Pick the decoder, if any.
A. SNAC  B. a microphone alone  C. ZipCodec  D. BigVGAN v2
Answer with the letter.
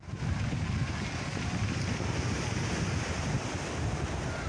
B